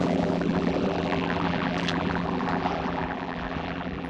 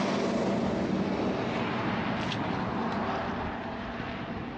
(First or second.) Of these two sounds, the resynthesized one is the first